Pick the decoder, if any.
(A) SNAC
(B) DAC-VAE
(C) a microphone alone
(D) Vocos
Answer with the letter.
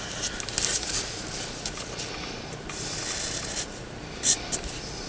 C